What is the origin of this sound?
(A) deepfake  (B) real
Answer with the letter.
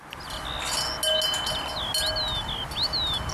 B